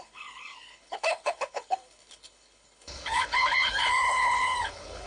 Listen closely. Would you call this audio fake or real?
fake